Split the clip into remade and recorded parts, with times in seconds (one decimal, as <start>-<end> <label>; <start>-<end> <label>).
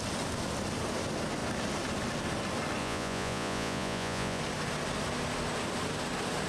0.0-2.8 recorded; 2.8-4.4 remade; 4.4-6.5 recorded